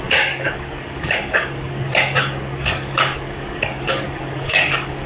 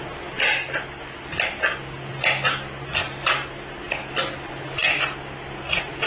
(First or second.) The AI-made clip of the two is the first